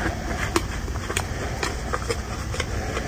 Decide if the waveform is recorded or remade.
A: recorded